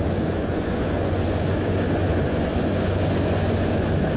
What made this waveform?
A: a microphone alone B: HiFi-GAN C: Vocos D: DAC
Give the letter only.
C